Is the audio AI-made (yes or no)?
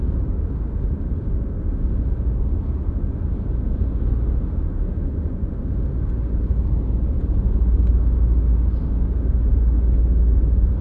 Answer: no